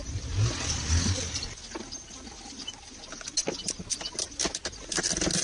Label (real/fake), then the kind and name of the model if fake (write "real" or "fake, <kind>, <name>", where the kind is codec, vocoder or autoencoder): real